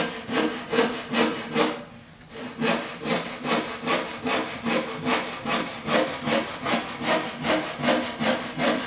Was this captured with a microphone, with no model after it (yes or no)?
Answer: yes